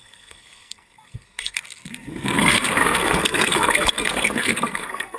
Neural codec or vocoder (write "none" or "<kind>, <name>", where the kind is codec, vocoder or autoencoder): codec, SNAC